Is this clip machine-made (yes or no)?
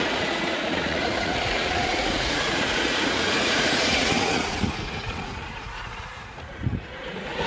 yes